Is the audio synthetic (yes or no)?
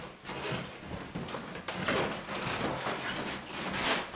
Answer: no